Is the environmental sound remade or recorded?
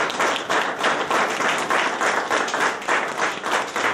recorded